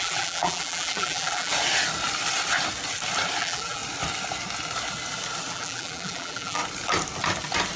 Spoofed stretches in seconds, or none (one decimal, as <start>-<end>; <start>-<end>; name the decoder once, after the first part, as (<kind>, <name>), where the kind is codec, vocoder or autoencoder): 0.0-1.5 (vocoder, BigVGAN v2); 3.4-3.8; 5.5-6.6